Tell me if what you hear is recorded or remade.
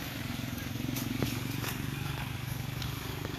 remade